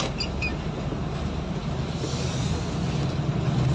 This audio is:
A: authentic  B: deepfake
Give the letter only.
A